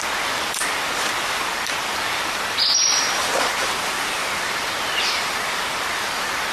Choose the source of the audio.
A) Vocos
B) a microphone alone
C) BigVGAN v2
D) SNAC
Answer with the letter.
C